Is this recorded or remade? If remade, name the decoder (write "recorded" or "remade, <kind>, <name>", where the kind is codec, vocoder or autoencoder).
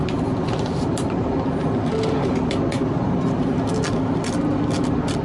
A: recorded